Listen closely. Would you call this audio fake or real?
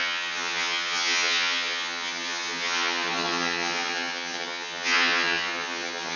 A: fake